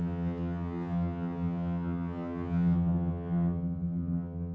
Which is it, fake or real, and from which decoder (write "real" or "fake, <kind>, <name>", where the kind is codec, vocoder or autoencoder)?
fake, vocoder, HiFi-GAN